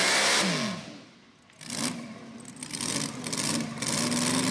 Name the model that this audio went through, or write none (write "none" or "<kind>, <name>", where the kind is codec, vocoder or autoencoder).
none